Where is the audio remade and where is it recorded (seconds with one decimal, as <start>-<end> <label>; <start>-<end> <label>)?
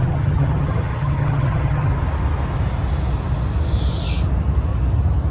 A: 0.0-1.9 remade; 1.9-5.3 recorded